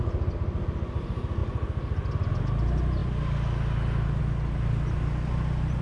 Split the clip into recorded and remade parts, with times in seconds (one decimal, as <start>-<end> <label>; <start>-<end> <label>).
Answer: 0.0-5.8 recorded